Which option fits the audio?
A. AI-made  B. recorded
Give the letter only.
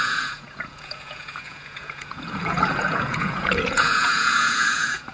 A